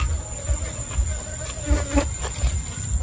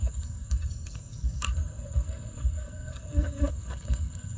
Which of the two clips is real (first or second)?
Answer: first